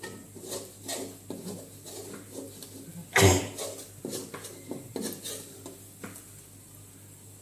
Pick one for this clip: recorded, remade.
recorded